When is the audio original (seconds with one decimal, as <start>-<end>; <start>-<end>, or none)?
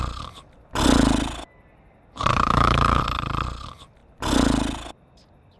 0.0-2.3; 3.0-5.6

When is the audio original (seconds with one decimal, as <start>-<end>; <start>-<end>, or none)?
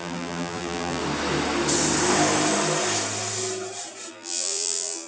1.0-4.1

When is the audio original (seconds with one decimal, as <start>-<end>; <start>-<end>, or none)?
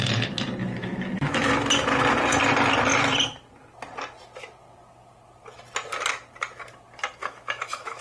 0.0-0.6; 1.5-7.2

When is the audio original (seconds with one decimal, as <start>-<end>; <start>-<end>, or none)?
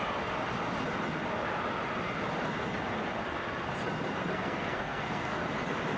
0.0-4.3; 5.4-6.0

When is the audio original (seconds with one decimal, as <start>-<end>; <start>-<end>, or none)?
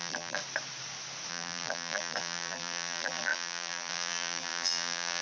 0.4-1.3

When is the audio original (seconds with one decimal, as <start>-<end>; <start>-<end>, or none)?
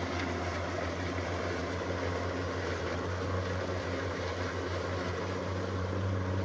1.6-3.8; 4.3-5.1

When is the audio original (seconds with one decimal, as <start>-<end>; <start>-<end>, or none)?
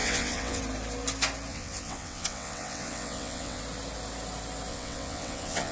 0.6-1.5; 3.6-4.7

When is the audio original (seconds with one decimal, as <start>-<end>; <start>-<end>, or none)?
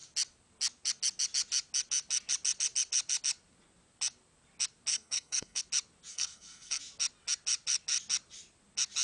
0.0-4.9; 5.6-6.1; 6.8-9.0